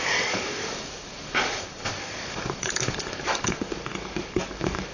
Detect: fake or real fake